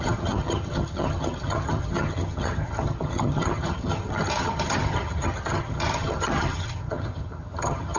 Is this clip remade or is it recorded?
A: remade